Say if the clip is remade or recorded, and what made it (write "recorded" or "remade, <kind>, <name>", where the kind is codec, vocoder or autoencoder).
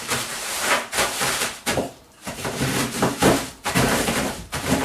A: remade, vocoder, BigVGAN v2